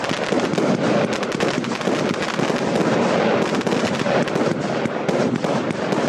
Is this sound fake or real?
real